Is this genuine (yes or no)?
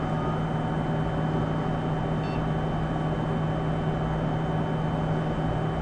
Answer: yes